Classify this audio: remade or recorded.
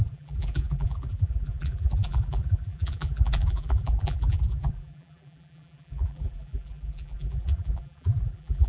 remade